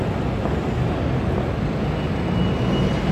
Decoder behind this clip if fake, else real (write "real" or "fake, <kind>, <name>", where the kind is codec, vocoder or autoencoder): real